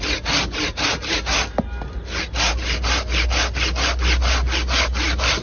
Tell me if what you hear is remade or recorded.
recorded